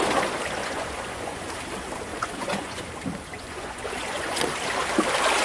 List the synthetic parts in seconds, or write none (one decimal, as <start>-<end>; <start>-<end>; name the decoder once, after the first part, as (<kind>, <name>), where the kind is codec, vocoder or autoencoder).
0.6-1.5 (vocoder, Vocos); 2.1-2.9; 3.3-4.4